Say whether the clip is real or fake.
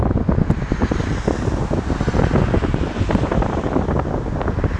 real